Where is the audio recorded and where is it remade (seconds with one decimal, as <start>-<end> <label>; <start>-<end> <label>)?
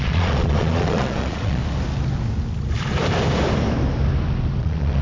0.0-1.6 remade; 1.6-4.6 recorded; 4.6-5.0 remade